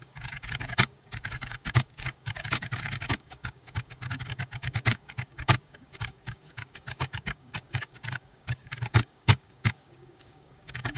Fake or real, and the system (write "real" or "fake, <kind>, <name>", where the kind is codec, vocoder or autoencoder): fake, codec, DAC